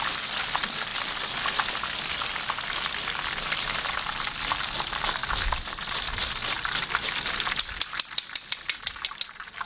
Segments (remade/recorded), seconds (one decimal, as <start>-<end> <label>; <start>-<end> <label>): 0.0-9.7 recorded